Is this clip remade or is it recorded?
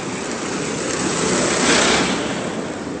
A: recorded